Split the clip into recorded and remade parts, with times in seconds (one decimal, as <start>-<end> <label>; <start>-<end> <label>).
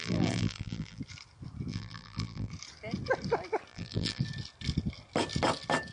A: 0.0-1.0 remade; 1.0-1.7 recorded; 1.7-2.5 remade; 2.5-3.7 recorded; 3.7-4.2 remade; 4.2-5.9 recorded